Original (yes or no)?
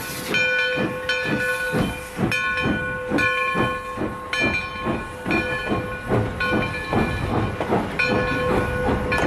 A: yes